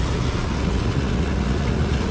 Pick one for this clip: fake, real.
fake